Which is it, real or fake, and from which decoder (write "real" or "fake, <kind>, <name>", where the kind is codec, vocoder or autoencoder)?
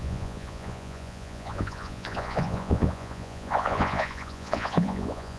fake, vocoder, Vocos